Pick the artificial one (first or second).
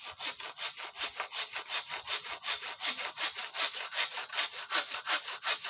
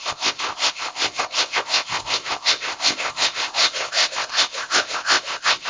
second